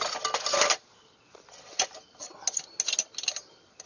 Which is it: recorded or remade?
recorded